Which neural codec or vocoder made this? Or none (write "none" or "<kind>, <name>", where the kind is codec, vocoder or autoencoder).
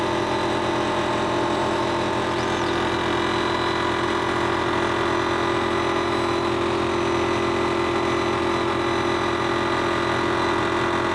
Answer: none